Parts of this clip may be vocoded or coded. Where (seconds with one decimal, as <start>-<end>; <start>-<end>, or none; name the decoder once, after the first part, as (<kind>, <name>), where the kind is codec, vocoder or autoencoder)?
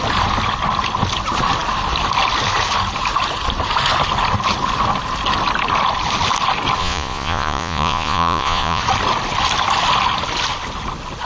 6.8-8.8 (vocoder, Vocos)